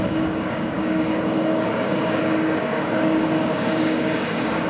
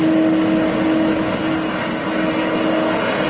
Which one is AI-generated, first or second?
first